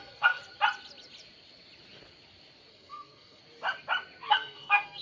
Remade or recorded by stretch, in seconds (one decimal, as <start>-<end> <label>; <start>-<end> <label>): 0.0-0.4 remade; 0.4-2.7 recorded; 2.7-3.4 remade; 3.4-4.3 recorded; 4.3-5.0 remade